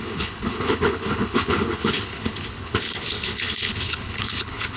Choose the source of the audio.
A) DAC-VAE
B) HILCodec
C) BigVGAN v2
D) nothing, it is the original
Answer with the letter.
B